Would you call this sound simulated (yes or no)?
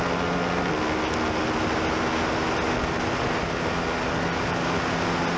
no